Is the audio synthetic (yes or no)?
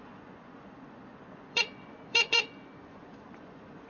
yes